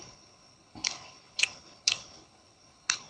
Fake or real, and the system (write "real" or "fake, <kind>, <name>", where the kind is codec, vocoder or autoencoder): fake, codec, HILCodec